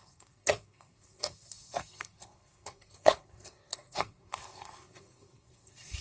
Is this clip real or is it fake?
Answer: fake